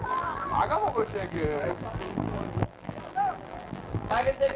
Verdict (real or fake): fake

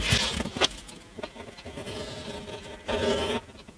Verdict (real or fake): real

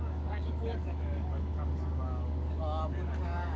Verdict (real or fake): fake